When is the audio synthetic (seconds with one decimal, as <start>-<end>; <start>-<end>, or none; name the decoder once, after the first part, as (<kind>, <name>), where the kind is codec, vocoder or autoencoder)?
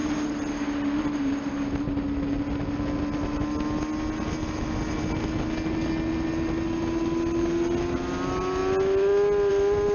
none